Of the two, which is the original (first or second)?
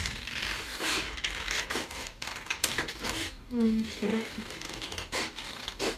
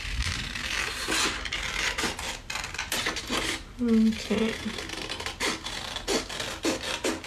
second